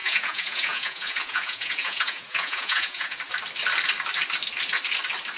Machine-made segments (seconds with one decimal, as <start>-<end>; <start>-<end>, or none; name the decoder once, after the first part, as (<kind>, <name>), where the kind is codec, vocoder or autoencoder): 0.0-3.2 (vocoder, Vocos)

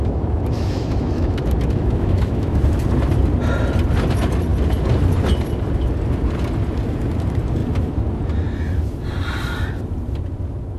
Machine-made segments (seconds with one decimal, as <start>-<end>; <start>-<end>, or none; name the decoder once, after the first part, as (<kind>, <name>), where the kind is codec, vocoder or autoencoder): 0.0-2.6 (autoencoder, DAC-VAE)

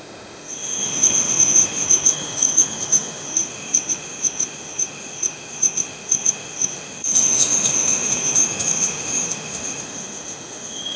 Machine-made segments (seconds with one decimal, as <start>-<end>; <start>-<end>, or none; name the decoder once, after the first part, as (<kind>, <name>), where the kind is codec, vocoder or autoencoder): 0.0-11.0 (autoencoder, DAC-VAE)

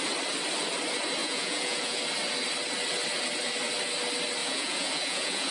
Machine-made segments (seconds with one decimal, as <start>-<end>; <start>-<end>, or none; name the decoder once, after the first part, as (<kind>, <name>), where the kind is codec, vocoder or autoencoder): 1.2-2.0 (vocoder, Vocos); 4.4-5.5

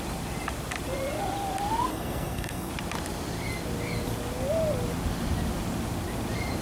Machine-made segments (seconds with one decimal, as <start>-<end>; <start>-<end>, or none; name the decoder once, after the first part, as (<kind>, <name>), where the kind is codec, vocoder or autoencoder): 1.9-2.7 (codec, SNAC)

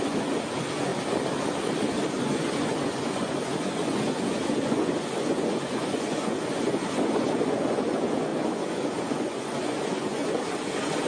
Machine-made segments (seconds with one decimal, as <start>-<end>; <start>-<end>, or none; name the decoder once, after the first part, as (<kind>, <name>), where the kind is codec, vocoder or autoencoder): 0.0-0.9 (vocoder, Vocos); 2.2-11.1